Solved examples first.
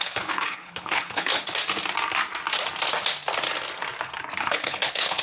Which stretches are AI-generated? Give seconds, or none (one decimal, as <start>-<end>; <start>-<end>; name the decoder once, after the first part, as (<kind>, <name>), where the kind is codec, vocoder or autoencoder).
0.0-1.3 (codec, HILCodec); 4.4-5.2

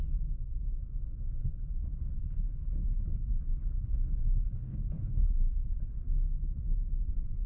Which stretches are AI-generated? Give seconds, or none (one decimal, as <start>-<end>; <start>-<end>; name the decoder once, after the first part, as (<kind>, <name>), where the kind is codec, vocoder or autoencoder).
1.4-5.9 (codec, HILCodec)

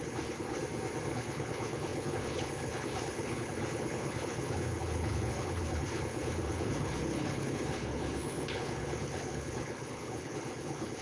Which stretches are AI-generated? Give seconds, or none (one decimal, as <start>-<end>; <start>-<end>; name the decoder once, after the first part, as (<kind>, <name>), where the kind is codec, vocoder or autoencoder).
0.0-0.6 (codec, HILCodec); 1.1-11.0